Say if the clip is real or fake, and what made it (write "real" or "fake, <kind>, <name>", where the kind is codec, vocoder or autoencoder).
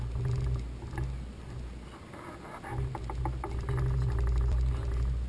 real